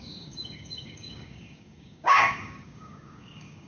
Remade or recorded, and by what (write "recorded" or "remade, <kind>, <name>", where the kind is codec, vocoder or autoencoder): remade, codec, DAC